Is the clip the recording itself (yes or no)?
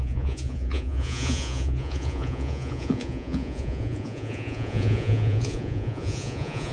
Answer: no